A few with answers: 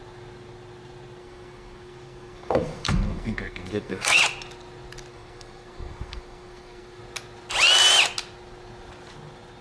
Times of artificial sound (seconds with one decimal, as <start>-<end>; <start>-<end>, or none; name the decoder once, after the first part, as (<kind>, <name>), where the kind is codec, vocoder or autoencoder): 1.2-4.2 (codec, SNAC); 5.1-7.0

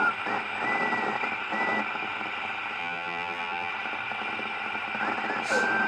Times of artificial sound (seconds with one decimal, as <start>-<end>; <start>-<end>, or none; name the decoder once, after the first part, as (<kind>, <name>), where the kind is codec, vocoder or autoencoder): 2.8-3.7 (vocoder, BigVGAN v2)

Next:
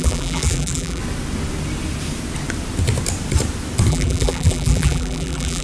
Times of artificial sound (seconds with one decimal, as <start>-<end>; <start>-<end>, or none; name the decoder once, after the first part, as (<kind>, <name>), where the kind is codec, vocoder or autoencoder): 0.0-1.0 (vocoder, BigVGAN v2); 3.9-5.6

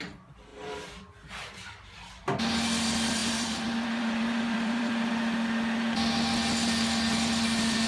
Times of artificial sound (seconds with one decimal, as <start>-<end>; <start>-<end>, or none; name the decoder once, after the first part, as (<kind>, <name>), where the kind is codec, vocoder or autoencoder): 0.5-1.1 (vocoder, BigVGAN v2); 3.2-5.1

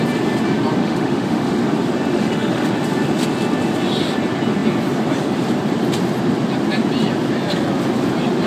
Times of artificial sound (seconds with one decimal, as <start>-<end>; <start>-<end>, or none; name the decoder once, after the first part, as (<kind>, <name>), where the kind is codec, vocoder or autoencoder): 0.8-1.6 (autoencoder, DAC-VAE); 2.1-2.7

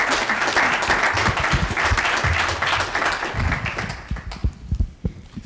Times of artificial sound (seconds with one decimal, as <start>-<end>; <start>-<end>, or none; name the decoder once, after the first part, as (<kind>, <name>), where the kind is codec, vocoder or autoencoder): 1.2-3.9 (vocoder, BigVGAN v2); 4.4-5.1